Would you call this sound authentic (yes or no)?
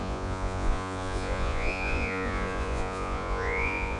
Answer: no